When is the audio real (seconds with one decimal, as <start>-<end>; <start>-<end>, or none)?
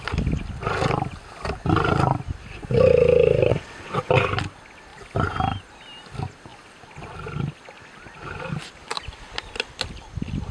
0.0-3.5; 4.1-10.5